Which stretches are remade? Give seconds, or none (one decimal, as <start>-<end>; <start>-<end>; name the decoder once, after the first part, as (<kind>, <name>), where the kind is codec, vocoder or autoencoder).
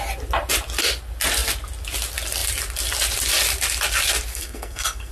4.3-5.1 (codec, SNAC)